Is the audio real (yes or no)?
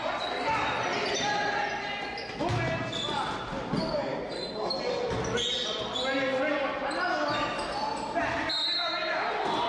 yes